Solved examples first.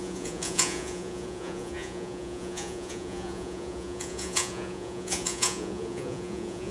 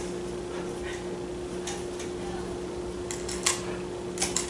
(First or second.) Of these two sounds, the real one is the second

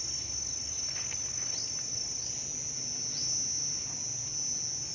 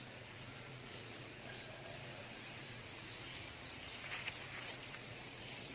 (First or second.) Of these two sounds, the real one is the first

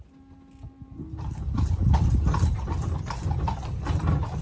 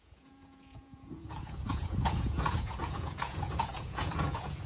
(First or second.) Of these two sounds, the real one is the first